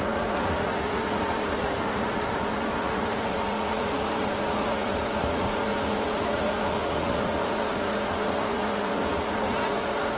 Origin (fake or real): fake